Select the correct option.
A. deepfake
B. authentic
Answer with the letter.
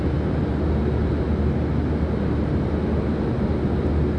B